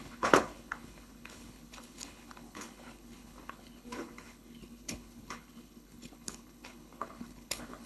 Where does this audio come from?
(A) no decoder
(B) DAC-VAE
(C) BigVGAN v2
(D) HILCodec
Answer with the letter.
D